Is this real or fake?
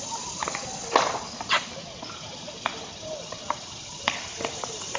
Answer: real